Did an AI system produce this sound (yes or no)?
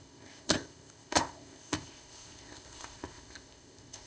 yes